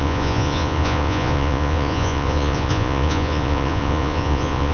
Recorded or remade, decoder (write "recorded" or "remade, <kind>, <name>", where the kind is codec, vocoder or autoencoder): remade, vocoder, Vocos